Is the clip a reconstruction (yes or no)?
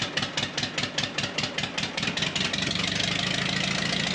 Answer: no